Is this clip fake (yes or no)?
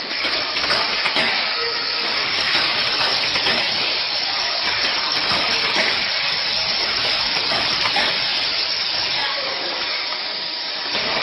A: yes